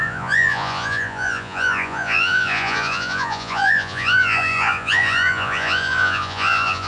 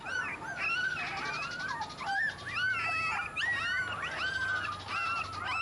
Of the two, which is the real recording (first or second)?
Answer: second